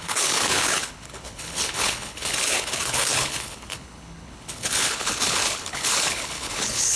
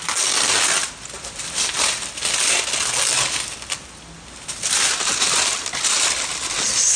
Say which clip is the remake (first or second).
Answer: first